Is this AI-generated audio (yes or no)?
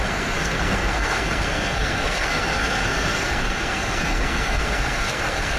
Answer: yes